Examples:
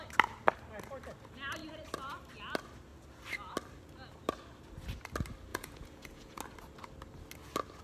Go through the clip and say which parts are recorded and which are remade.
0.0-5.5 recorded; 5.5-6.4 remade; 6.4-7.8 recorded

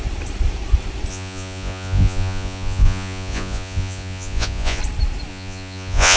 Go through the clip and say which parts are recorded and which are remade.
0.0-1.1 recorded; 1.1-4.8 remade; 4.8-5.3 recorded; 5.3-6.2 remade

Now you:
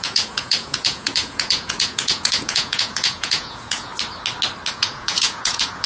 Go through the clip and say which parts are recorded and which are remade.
0.0-3.9 remade; 3.9-4.7 recorded; 4.7-5.9 remade

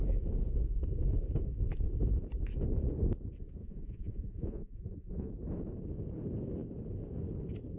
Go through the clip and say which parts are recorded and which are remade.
0.0-3.6 recorded; 3.6-5.3 remade; 5.3-7.8 recorded